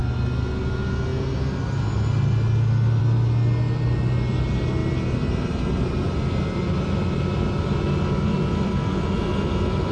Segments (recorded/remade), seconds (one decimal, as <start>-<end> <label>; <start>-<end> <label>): 0.0-9.9 recorded